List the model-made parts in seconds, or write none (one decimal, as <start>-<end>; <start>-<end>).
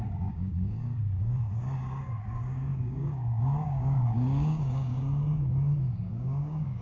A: 0.0-6.8